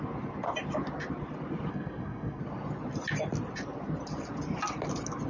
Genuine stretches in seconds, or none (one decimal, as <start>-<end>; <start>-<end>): 0.0-1.7; 2.4-5.3